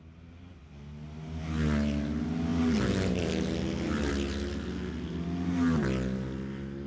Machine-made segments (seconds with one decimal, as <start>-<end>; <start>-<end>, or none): none